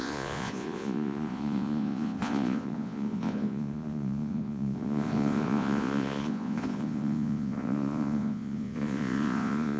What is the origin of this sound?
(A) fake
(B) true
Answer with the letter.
A